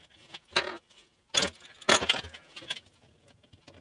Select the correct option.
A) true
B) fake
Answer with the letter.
A